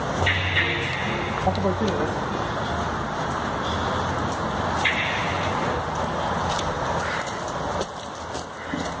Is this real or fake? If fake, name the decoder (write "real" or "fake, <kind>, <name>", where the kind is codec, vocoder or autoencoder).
real